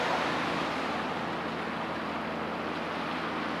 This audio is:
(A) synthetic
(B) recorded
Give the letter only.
B